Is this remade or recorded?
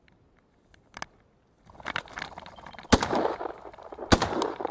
recorded